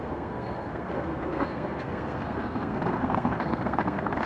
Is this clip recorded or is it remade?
remade